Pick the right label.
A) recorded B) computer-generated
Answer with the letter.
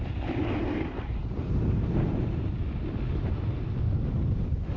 A